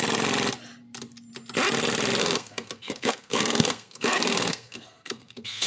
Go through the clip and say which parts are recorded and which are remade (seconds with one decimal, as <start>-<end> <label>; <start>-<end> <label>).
0.0-2.2 recorded; 2.2-5.7 remade